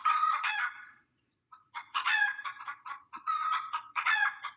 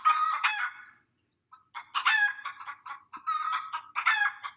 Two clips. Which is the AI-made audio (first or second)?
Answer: first